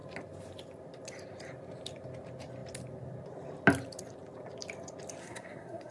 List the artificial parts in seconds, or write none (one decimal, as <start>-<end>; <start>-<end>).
5.2-5.9